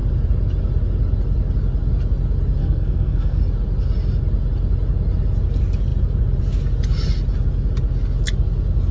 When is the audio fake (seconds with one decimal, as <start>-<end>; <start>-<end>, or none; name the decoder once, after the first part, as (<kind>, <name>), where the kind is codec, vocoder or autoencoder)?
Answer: 2.6-3.4 (codec, SNAC)